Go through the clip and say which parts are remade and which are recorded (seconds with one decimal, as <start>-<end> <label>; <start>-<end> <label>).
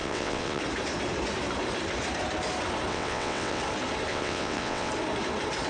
0.0-0.6 remade; 0.6-2.9 recorded; 2.9-3.6 remade; 3.6-4.1 recorded; 4.1-4.9 remade; 4.9-5.7 recorded